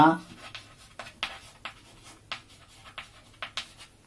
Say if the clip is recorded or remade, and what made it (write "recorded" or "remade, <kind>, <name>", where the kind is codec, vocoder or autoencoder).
recorded